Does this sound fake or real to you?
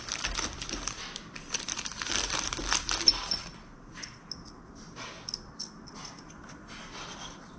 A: real